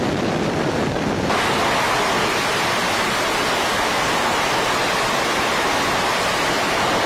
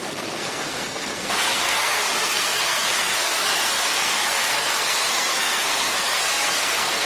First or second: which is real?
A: first